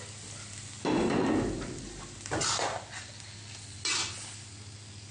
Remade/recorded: recorded